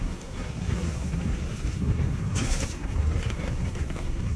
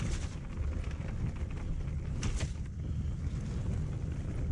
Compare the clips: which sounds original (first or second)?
second